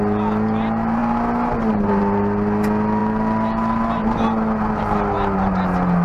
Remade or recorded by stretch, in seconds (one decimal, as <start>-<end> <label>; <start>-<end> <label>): 0.0-6.0 recorded